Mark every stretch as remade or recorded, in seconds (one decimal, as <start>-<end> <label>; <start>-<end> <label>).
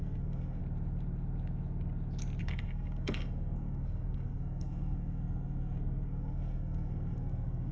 0.0-0.6 remade; 0.6-2.4 recorded; 2.4-7.7 remade